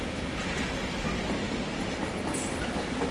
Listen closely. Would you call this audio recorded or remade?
recorded